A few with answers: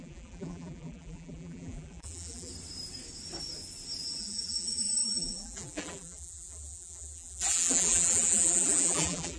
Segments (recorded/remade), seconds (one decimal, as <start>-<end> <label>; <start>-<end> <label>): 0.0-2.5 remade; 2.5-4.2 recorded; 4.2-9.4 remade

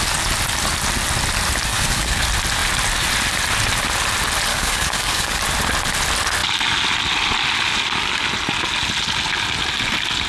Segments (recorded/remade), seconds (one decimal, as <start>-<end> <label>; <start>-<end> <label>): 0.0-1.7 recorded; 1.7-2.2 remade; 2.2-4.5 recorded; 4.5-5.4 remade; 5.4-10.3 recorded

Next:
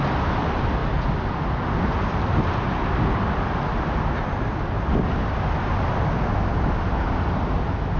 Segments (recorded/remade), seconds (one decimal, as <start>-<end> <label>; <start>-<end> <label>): 0.0-8.0 recorded

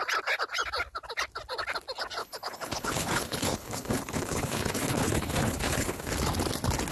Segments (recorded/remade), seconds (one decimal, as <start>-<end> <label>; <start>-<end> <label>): 0.0-2.2 recorded; 2.2-6.1 remade; 6.1-6.9 recorded